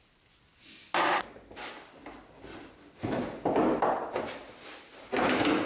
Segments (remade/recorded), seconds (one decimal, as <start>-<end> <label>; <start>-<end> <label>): 0.0-5.7 recorded